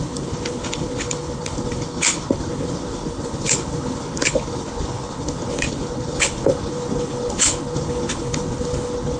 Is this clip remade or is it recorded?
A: remade